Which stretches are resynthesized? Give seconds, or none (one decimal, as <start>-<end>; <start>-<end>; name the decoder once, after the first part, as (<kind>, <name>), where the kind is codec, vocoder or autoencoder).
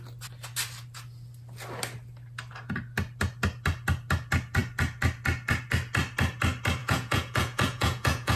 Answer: 6.8-8.4 (vocoder, Vocos)